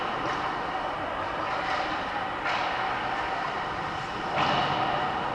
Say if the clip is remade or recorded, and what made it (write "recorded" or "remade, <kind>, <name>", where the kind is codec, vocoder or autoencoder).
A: recorded